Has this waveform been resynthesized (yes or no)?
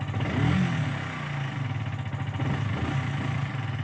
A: no